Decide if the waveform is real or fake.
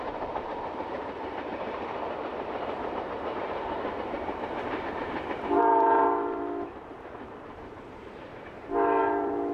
fake